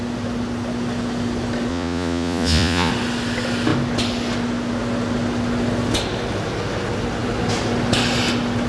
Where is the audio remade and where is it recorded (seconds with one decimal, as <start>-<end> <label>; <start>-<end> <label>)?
0.0-1.7 recorded; 1.7-2.9 remade; 2.9-8.7 recorded